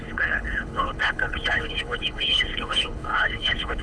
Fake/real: fake